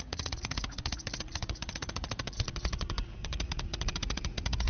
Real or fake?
fake